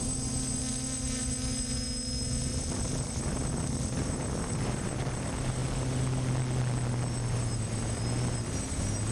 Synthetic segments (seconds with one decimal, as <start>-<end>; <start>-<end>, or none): none